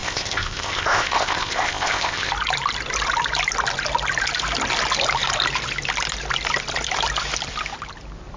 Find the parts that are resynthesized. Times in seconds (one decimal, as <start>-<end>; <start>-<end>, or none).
0.0-2.3